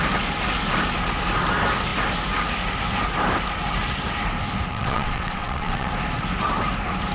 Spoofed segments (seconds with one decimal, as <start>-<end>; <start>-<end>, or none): 4.7-5.9